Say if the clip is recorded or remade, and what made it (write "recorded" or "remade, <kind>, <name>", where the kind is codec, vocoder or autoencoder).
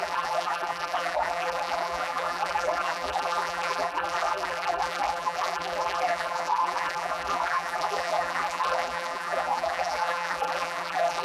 remade, vocoder, BigVGAN v2